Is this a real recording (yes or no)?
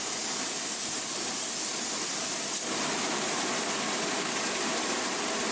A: yes